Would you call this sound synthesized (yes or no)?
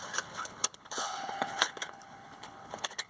yes